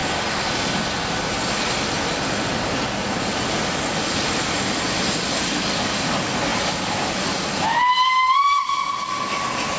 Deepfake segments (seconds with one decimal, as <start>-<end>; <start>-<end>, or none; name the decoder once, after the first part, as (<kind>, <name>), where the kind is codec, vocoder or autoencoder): none